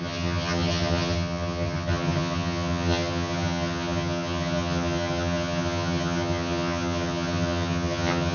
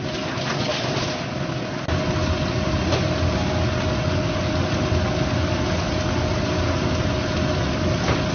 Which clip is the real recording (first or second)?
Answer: second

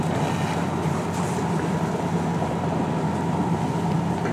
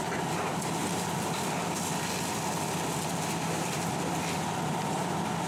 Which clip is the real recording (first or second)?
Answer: first